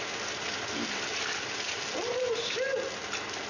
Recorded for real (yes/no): yes